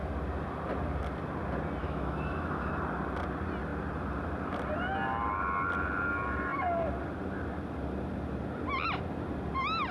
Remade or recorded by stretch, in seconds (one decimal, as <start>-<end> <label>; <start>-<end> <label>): 0.0-1.8 recorded; 1.8-2.8 remade; 2.8-9.9 recorded